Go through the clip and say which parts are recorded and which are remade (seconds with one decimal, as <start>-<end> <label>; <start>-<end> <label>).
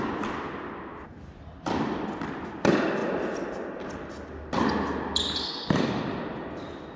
0.0-7.0 recorded